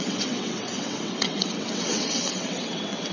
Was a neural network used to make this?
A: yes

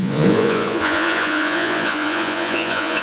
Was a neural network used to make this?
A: yes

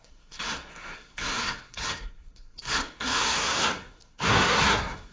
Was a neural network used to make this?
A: yes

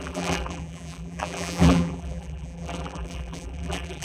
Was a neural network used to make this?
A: yes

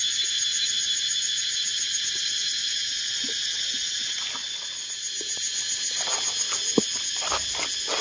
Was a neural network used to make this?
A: no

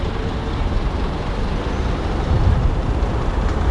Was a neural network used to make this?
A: yes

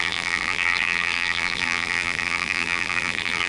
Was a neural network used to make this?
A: yes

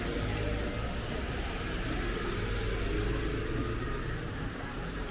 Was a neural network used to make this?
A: no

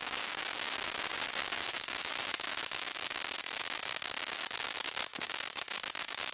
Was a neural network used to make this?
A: yes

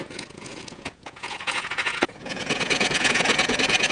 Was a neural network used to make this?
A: yes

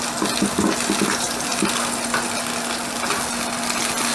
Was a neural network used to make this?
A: no